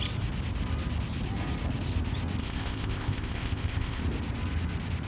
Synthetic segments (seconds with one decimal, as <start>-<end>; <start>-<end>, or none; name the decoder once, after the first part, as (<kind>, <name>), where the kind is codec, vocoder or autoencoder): 2.4-4.0 (codec, ZipCodec)